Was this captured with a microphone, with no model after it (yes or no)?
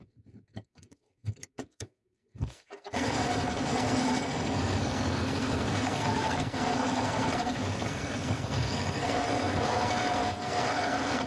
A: no